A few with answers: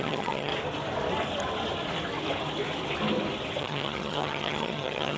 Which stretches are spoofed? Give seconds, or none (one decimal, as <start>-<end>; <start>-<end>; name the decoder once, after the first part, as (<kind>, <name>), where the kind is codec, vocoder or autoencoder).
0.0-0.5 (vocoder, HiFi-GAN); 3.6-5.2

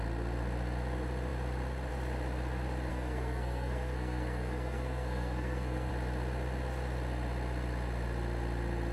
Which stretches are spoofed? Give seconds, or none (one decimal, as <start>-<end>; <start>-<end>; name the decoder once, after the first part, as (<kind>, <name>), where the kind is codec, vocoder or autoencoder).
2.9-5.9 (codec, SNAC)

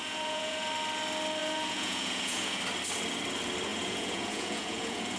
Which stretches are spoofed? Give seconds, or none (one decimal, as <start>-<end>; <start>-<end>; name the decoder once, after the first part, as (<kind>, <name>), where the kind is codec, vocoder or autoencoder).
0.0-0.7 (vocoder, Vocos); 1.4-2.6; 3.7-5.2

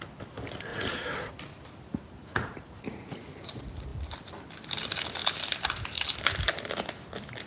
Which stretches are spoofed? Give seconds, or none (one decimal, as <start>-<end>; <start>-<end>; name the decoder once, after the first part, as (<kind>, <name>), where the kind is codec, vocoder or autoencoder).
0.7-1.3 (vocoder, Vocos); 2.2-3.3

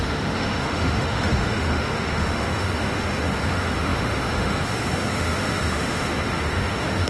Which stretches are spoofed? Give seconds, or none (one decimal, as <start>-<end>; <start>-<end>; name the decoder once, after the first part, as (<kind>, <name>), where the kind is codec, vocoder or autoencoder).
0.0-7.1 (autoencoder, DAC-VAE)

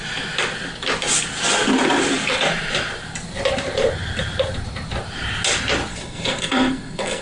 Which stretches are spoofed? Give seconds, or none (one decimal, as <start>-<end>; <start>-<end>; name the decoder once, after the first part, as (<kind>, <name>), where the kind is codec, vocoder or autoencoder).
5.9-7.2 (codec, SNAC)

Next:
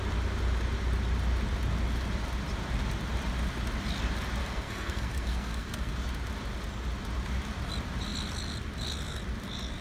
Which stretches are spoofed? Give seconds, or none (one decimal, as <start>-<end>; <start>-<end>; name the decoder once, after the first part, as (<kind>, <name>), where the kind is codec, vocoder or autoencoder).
4.4-5.9 (codec, SNAC)

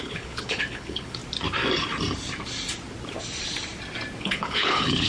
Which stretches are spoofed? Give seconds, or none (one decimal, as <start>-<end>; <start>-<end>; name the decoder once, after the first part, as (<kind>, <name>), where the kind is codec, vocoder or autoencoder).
0.0-1.2 (codec, HILCodec); 4.2-5.1